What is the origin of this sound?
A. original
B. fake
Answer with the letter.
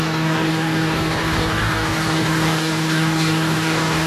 B